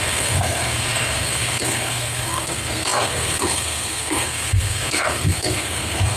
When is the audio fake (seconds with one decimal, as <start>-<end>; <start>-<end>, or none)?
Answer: 0.0-6.2